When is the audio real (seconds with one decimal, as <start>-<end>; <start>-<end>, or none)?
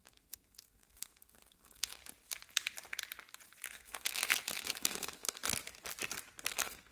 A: 2.0-3.7; 5.4-6.5